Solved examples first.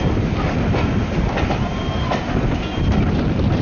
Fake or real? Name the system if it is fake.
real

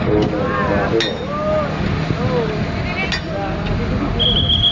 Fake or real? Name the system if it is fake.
real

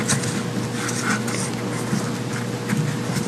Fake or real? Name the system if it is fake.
real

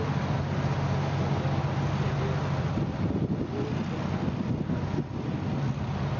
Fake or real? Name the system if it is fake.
real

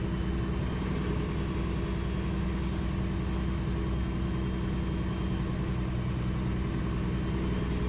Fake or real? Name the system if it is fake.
real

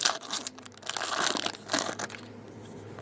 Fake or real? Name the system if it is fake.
real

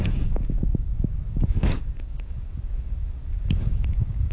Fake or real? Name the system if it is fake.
fake, codec, DAC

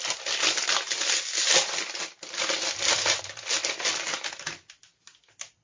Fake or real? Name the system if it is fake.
real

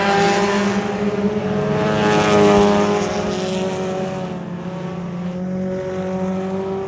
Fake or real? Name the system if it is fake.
real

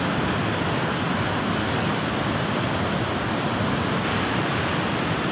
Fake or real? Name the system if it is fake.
real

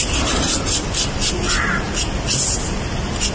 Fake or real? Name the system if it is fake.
real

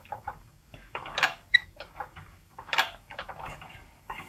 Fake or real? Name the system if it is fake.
fake, codec, DAC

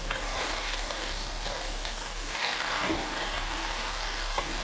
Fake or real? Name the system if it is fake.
fake, codec, DAC